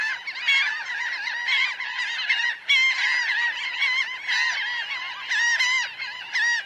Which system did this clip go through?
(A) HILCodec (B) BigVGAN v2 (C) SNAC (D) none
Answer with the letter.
D